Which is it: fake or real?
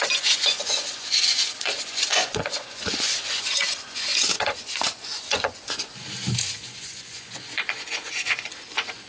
fake